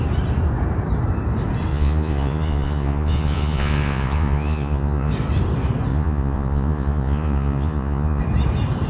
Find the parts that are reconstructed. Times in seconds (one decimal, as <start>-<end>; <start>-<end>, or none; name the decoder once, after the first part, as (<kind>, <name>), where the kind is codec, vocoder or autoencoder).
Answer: 1.7-5.1 (vocoder, Vocos); 5.9-8.2